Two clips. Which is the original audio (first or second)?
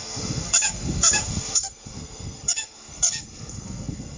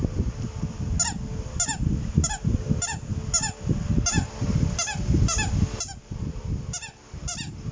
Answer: second